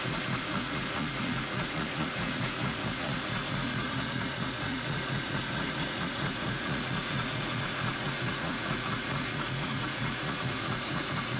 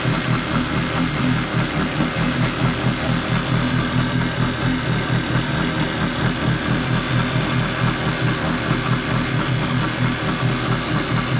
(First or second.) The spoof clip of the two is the first